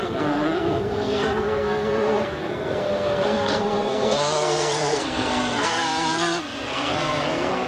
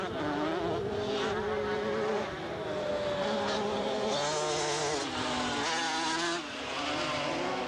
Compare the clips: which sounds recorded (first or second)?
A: second